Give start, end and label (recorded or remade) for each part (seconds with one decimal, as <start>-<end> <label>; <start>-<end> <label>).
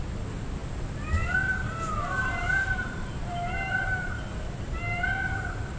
0.0-2.2 recorded; 2.2-4.2 remade; 4.2-5.8 recorded